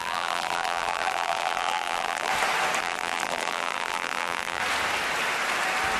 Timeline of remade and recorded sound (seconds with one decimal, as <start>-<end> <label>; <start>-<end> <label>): 0.0-2.3 remade; 2.3-2.8 recorded; 2.8-4.6 remade; 4.6-6.0 recorded